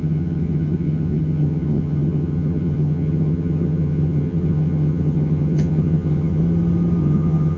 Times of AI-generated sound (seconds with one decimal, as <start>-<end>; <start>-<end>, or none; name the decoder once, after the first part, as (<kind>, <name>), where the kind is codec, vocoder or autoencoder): 0.0-6.4 (vocoder, HiFi-GAN); 7.0-7.6